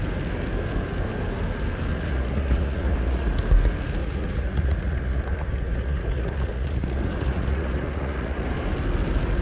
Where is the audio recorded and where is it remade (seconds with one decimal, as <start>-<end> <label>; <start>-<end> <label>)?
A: 0.0-1.9 recorded; 1.9-3.3 remade; 3.3-4.0 recorded; 4.0-8.5 remade; 8.5-9.4 recorded